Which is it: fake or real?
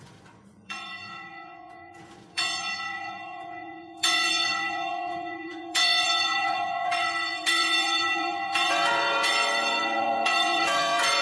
fake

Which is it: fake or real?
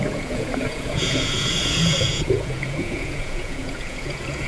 fake